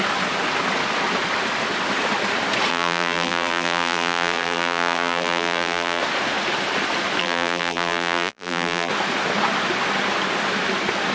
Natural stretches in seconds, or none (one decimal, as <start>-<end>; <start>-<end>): 0.0-2.7; 6.0-7.2; 8.9-11.1